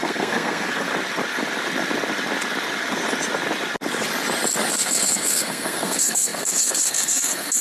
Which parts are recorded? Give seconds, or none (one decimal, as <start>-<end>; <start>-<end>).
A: 0.9-4.7